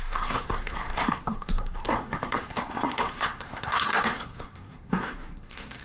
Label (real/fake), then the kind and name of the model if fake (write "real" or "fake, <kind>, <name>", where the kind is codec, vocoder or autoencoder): fake, codec, SNAC